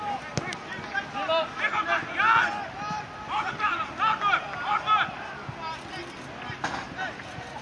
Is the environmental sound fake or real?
real